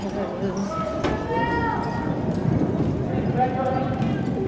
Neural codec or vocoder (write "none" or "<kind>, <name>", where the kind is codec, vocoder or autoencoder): none